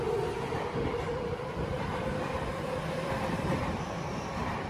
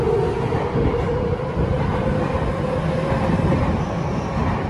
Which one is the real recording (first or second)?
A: second